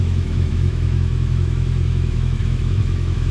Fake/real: fake